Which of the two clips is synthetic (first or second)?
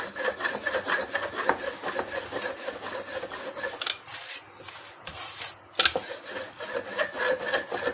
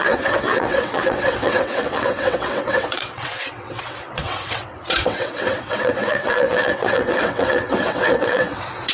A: second